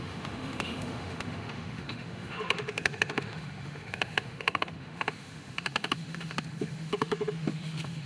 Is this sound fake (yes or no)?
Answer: yes